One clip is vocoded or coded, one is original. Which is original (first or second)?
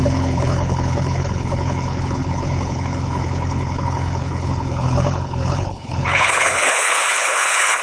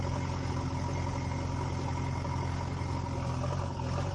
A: second